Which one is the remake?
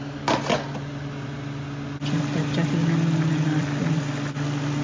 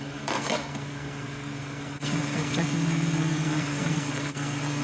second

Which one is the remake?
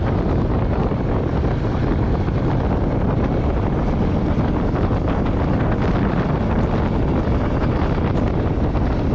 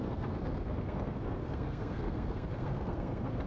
second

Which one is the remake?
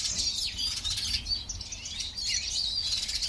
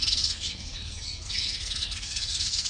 second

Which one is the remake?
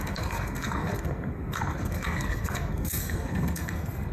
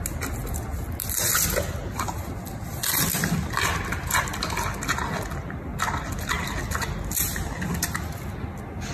first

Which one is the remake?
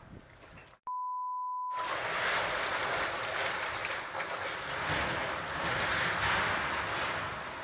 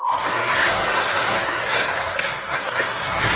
second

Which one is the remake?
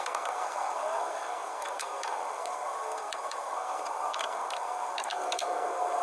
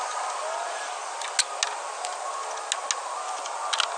first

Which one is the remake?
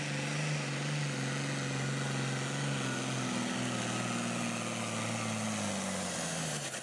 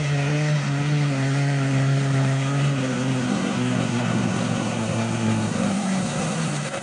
second